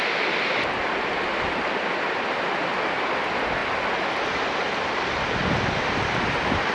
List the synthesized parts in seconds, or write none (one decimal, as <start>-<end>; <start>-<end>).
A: none